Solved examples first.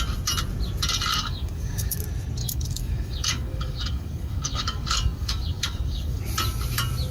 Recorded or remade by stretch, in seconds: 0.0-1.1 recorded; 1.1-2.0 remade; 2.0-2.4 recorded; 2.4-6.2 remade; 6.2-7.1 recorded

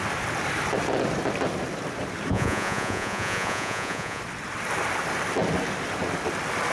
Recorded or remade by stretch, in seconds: 0.0-2.3 recorded; 2.3-4.2 remade; 4.2-6.7 recorded

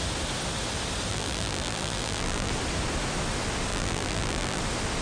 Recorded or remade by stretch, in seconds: 0.0-1.1 recorded; 1.1-2.5 remade; 2.5-3.7 recorded; 3.7-4.6 remade; 4.6-5.0 recorded

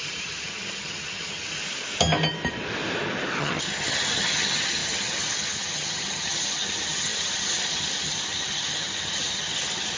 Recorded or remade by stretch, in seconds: 0.0-1.6 remade; 1.6-3.4 recorded; 3.4-10.0 remade

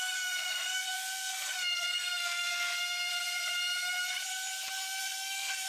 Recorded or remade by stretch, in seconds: 0.0-3.1 remade; 3.1-5.0 recorded; 5.0-5.7 remade

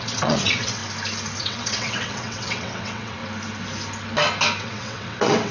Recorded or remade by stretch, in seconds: 0.0-0.8 remade; 0.8-1.4 recorded; 1.4-3.2 remade; 3.2-4.6 recorded; 4.6-5.5 remade